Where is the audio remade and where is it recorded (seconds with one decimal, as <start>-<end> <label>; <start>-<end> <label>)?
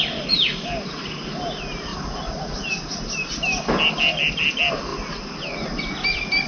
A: 0.0-6.5 recorded